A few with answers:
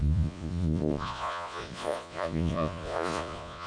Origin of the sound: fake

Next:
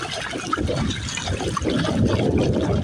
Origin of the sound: real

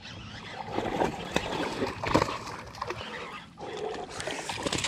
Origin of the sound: real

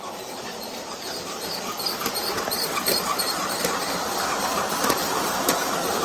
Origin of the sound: fake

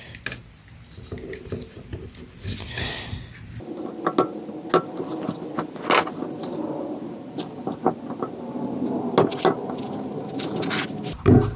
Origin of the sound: real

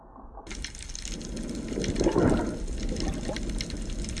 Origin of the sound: real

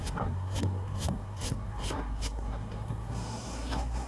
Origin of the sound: fake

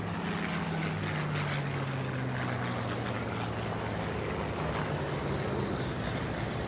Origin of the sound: real